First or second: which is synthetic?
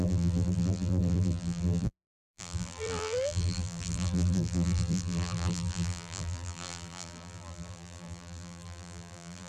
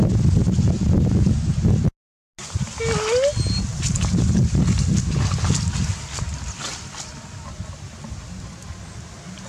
first